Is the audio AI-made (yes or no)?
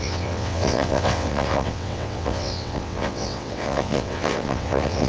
yes